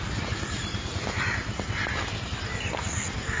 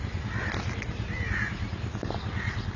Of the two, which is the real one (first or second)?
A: second